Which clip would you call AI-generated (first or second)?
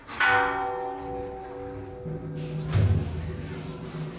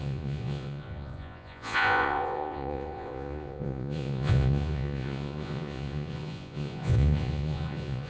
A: second